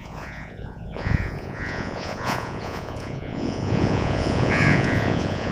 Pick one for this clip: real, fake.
fake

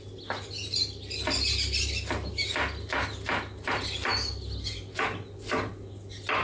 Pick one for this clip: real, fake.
real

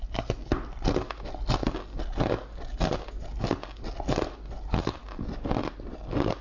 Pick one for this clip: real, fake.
real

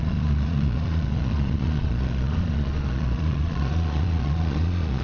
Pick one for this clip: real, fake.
fake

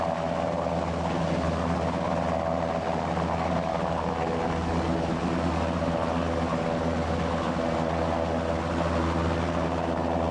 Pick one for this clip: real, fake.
real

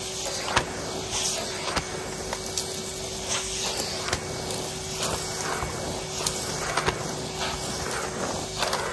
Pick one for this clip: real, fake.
real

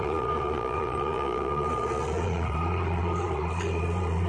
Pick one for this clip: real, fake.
fake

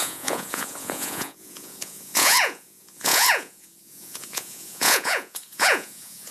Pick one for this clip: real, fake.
fake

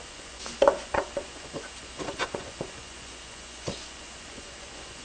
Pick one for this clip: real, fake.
fake